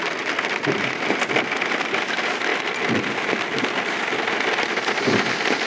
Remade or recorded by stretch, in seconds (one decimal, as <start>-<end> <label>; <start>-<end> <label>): 0.0-5.7 recorded